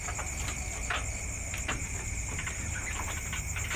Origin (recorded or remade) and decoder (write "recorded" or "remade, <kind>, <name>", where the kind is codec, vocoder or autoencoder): recorded